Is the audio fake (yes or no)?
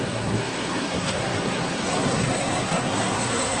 yes